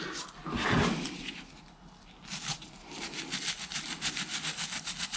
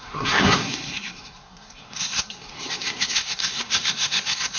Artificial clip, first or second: second